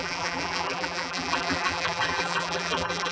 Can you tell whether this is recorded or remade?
remade